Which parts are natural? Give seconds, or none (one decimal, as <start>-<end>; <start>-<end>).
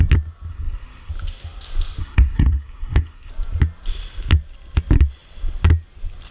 0.0-0.5; 1.1-2.0; 3.3-6.3